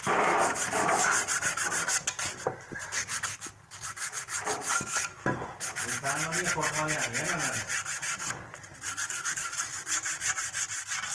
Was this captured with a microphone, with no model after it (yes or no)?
yes